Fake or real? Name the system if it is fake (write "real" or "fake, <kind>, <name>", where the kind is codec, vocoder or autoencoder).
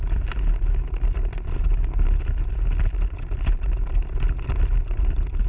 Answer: real